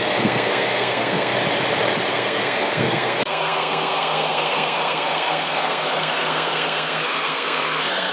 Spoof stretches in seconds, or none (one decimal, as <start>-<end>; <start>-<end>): 0.0-1.3; 2.1-8.1